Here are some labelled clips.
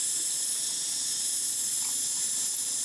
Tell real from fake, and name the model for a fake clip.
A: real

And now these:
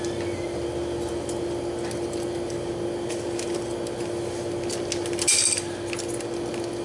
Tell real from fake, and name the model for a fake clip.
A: real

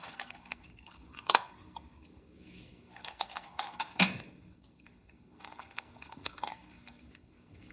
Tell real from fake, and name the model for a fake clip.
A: fake, codec, SNAC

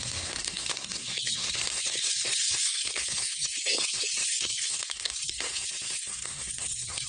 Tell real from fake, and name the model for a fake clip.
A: fake, codec, SNAC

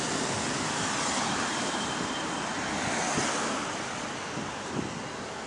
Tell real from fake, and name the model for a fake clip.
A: real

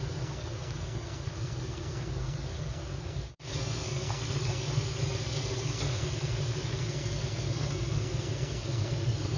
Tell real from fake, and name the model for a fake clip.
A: fake, codec, SNAC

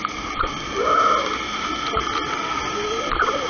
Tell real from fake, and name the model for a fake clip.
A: real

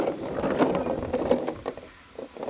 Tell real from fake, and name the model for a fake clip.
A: real